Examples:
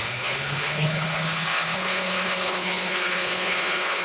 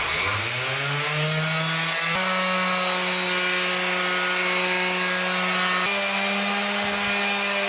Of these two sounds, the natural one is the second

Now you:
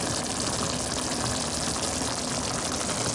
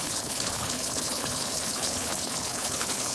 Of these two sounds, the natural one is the first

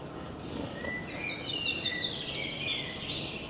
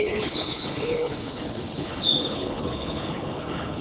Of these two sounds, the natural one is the first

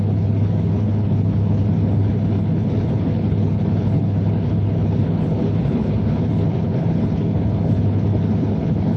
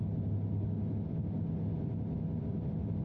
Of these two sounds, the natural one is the second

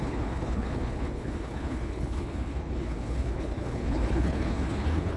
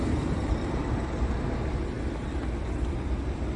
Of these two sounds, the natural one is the second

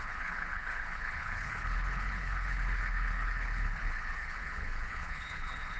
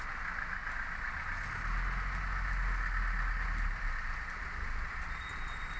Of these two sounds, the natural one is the second